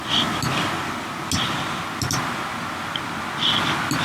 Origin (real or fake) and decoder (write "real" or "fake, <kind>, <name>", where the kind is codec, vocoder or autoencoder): real